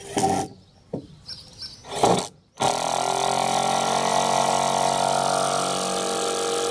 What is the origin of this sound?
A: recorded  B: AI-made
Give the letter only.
A